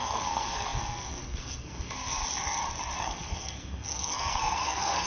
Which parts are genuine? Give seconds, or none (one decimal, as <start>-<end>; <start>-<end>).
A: 2.2-3.0